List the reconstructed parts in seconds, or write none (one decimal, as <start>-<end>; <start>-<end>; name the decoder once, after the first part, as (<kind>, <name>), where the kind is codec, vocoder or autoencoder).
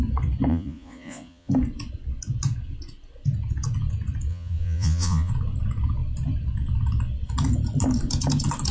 0.5-1.5 (vocoder, Vocos); 4.3-5.3